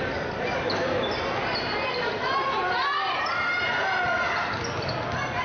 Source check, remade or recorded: recorded